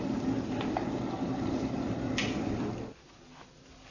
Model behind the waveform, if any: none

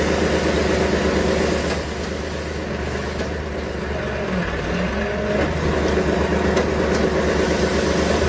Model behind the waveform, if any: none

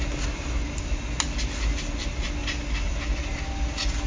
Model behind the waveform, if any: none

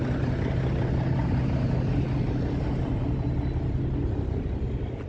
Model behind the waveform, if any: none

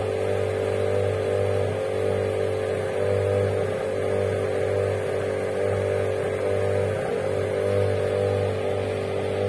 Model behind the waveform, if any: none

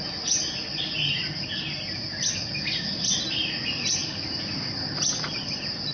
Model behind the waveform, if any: none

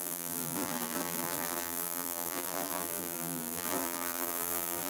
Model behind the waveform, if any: vocoder, BigVGAN v2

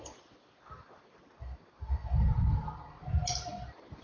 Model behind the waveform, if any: none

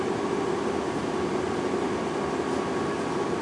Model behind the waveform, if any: none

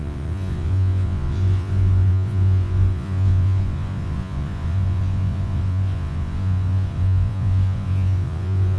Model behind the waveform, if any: vocoder, Vocos